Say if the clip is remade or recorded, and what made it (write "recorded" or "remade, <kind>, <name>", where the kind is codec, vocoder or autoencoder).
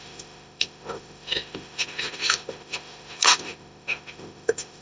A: remade, autoencoder, DAC-VAE